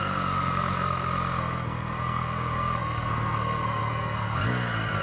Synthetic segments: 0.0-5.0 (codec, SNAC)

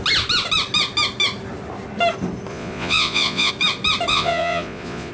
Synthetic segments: 2.5-3.5 (vocoder, Vocos); 4.1-5.1

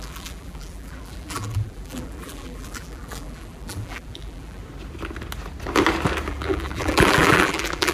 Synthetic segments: 0.0-4.6 (vocoder, BigVGAN v2); 6.3-7.9

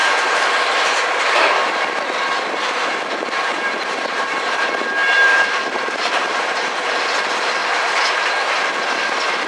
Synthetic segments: 0.0-7.6 (vocoder, BigVGAN v2); 8.4-9.5

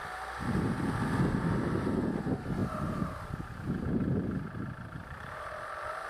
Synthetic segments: 2.6-5.5 (vocoder, BigVGAN v2)